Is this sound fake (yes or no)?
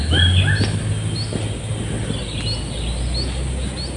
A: no